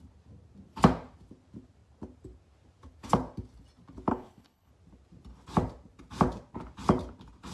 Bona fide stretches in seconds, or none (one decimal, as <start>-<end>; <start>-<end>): 0.0-4.1; 4.7-7.5